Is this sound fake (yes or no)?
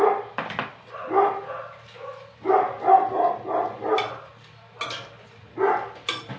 no